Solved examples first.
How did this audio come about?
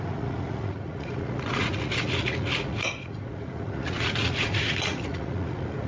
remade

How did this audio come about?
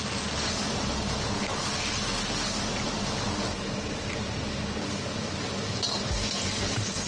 recorded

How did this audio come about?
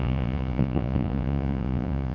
remade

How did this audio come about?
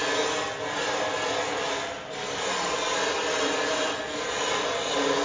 recorded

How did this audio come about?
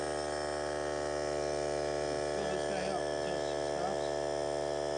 recorded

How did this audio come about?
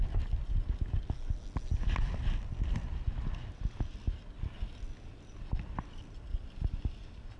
recorded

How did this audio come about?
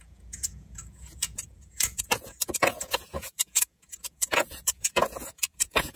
remade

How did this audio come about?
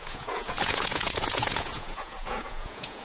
remade